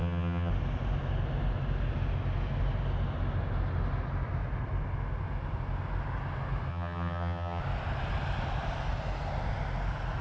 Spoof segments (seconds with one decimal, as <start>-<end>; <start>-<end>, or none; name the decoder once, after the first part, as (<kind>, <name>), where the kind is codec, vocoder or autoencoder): 0.0-0.5 (vocoder, HiFi-GAN); 6.7-7.6